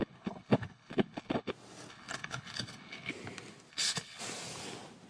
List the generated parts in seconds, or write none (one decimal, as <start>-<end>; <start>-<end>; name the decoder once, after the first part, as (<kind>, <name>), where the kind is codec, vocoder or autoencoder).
0.0-1.5 (codec, HILCodec); 1.9-3.1; 3.7-4.2